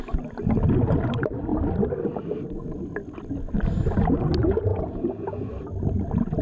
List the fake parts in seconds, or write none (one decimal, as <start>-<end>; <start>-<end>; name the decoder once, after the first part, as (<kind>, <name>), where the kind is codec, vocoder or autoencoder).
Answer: 4.7-5.5 (vocoder, Vocos)